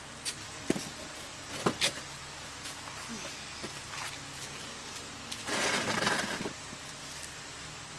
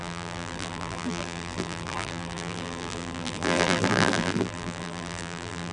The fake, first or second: second